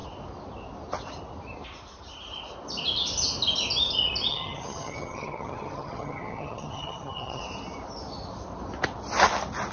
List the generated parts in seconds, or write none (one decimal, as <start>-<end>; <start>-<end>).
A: 4.3-7.4